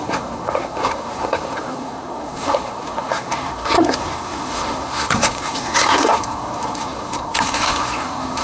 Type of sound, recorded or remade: remade